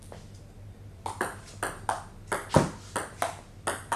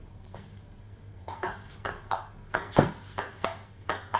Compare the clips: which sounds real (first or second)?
first